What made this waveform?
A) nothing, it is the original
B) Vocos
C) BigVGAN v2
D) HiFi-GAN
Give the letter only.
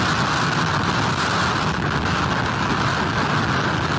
A